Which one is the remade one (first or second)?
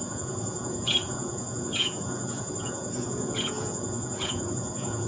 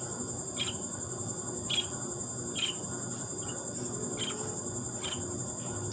first